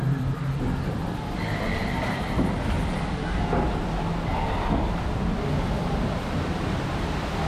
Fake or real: real